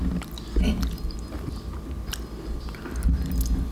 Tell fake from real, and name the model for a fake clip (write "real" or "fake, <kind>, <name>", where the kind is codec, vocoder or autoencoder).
real